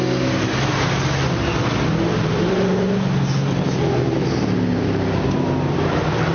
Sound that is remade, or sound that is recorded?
recorded